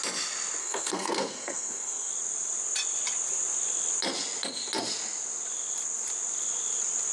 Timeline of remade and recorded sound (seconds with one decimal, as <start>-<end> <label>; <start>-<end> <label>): 0.0-0.6 recorded; 0.6-2.1 remade; 2.1-7.1 recorded